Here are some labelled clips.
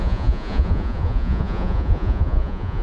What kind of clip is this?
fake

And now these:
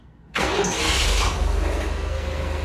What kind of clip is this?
fake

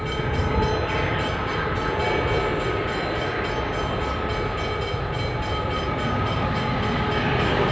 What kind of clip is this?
real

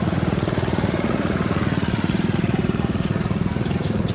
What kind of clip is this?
fake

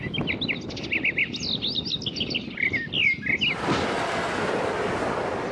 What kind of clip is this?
real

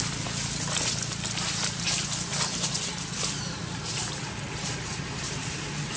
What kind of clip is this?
real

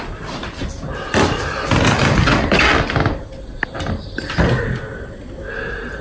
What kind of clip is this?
real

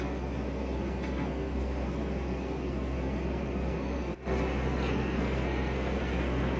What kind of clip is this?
fake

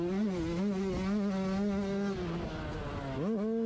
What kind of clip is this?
real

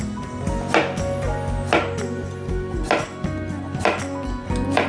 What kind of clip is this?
real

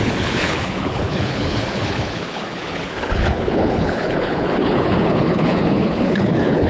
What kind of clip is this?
fake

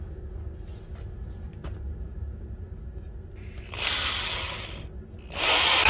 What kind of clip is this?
real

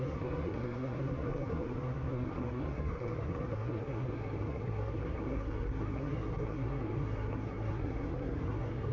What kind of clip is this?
fake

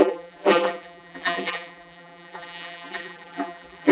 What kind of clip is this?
fake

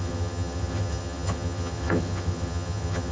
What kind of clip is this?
fake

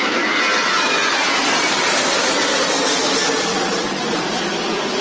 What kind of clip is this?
real